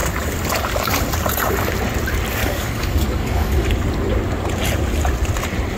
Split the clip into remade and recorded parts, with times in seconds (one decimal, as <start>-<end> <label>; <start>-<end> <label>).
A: 0.0-2.4 recorded; 2.4-3.7 remade; 3.7-5.8 recorded